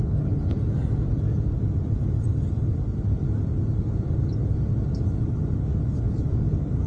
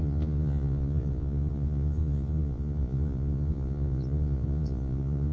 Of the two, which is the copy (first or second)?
second